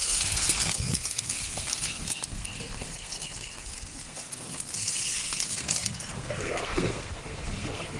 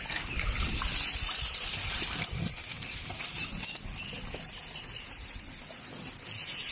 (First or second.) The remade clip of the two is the first